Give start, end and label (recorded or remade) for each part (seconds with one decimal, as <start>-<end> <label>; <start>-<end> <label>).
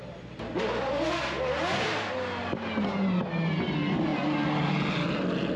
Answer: 0.0-5.6 recorded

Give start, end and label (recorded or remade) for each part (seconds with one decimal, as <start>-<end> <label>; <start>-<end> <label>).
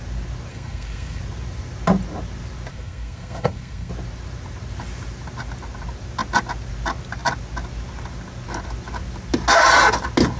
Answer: 0.0-0.5 recorded; 0.5-1.2 remade; 1.2-2.7 recorded; 2.7-3.9 remade; 3.9-10.4 recorded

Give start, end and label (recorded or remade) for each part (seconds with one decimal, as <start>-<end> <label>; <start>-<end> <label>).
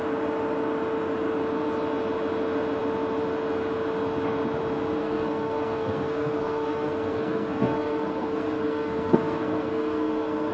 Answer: 0.0-5.0 recorded; 5.0-10.5 remade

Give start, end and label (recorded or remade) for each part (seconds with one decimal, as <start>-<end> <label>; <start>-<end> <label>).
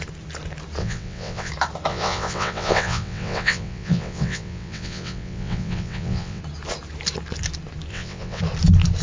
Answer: 0.0-0.8 recorded; 0.8-1.5 remade; 1.5-1.9 recorded; 1.9-6.4 remade; 6.4-7.9 recorded; 7.9-8.4 remade; 8.4-9.0 recorded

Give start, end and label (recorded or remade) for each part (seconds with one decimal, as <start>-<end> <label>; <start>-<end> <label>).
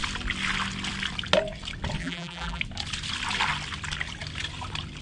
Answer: 0.0-2.0 recorded; 2.0-2.6 remade; 2.6-5.0 recorded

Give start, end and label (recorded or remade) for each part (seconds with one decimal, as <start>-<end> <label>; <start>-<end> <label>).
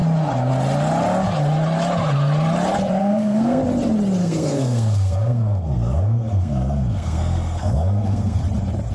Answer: 0.0-3.0 recorded; 3.0-3.6 remade; 3.6-4.2 recorded; 4.2-8.4 remade; 8.4-8.9 recorded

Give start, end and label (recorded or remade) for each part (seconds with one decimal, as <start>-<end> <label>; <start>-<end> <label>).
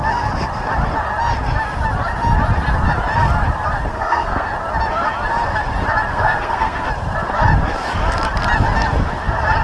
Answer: 0.0-3.9 recorded; 3.9-4.5 remade; 4.5-6.1 recorded; 6.1-6.9 remade; 6.9-9.6 recorded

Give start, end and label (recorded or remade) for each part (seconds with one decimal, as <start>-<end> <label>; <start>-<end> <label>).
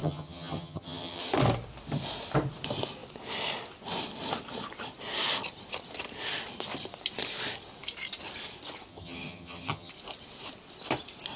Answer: 0.0-1.2 remade; 1.2-8.9 recorded; 8.9-9.9 remade; 9.9-11.4 recorded